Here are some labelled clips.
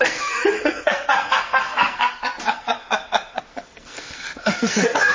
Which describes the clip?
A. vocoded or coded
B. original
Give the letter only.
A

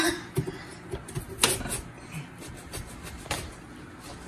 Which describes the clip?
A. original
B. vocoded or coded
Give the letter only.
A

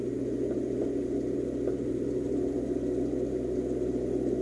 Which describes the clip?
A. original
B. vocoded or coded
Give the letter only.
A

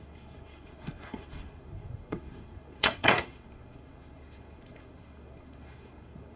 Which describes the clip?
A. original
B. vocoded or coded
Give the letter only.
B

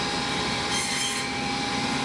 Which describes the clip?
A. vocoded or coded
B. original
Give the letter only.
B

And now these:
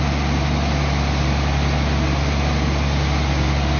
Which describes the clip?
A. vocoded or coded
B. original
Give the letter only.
B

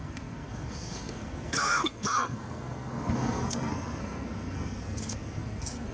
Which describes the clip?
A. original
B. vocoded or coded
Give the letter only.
B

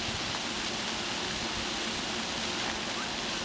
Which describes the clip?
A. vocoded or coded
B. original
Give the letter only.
B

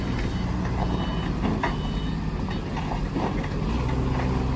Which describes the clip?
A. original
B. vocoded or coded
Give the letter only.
A